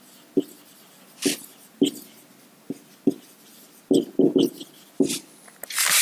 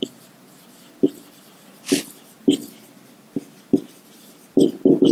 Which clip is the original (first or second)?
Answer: first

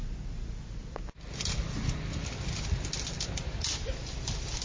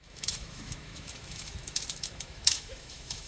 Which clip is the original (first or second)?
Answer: first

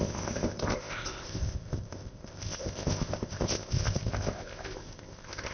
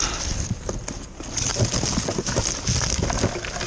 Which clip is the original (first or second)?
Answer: second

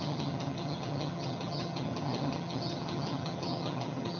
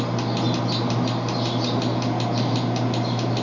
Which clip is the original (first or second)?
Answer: second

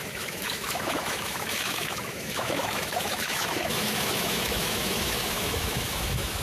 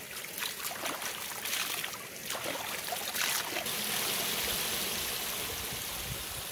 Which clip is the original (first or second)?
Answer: second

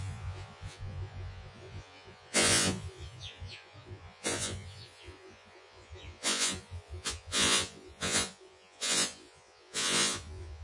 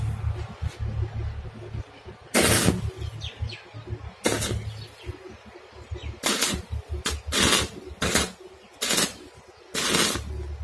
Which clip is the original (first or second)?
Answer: second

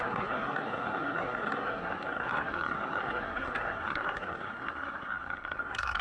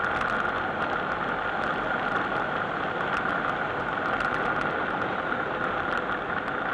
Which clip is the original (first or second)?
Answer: second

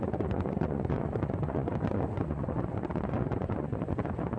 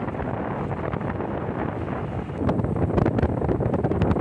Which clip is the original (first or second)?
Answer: second